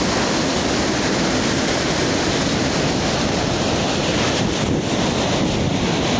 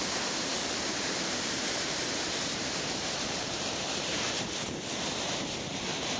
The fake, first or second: second